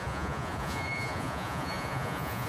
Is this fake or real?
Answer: fake